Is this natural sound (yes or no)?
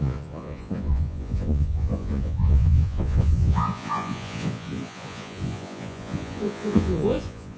no